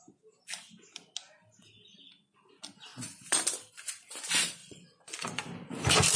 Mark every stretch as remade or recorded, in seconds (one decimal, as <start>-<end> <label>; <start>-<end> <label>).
0.0-4.6 recorded; 4.6-5.4 remade; 5.4-6.2 recorded